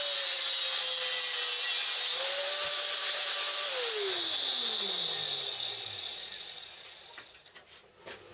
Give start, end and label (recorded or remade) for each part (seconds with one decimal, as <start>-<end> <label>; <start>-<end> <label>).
0.0-2.1 recorded; 2.1-3.7 remade; 3.7-8.3 recorded